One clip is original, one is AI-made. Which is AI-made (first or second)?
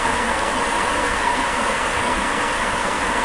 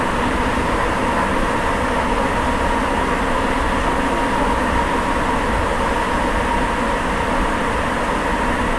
first